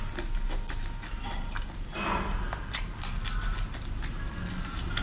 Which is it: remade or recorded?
recorded